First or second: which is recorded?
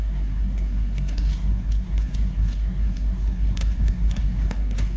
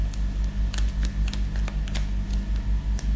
second